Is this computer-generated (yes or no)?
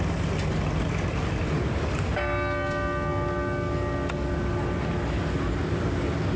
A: no